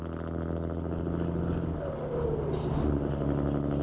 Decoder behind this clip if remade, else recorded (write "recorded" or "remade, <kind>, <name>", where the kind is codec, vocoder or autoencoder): recorded